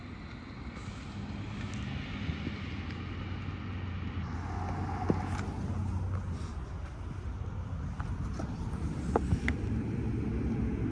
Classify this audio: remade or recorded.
recorded